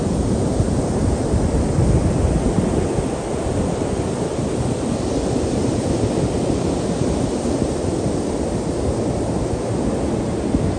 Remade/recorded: recorded